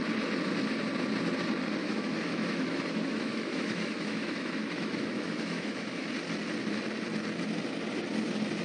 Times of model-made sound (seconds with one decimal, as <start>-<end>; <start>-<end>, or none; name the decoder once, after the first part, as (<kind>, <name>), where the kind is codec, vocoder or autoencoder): 1.8-6.1 (autoencoder, DAC-VAE)